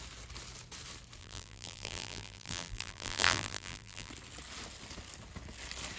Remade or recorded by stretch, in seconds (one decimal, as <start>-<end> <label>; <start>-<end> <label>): 0.0-1.2 recorded; 1.2-4.1 remade; 4.1-6.0 recorded